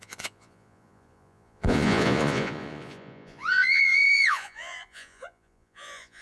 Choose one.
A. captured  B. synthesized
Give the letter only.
B